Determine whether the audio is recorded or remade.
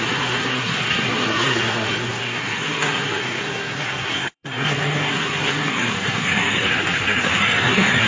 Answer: remade